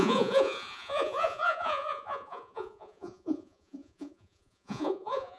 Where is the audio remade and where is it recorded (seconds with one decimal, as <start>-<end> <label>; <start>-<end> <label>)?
0.0-5.4 remade